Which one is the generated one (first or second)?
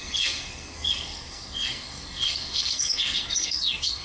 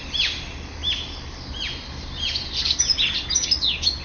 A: first